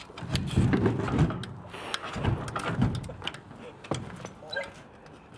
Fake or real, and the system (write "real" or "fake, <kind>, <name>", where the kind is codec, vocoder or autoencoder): real